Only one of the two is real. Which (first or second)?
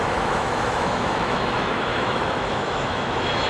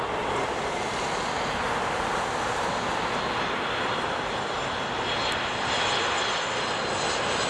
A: second